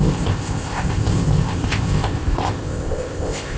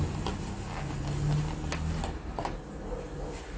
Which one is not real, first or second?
first